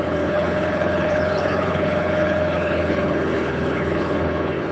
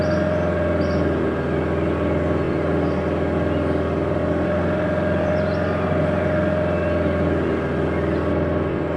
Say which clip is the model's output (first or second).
first